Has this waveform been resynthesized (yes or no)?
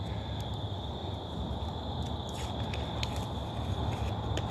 no